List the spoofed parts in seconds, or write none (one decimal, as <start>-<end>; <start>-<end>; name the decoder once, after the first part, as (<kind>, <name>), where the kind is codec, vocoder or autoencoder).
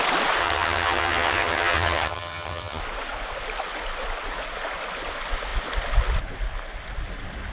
0.4-2.8 (vocoder, HiFi-GAN)